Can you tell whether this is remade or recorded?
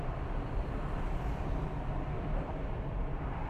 remade